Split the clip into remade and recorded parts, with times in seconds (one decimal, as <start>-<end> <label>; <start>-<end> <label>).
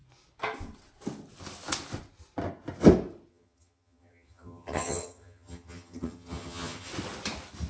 0.0-3.3 recorded; 3.3-6.9 remade; 6.9-7.7 recorded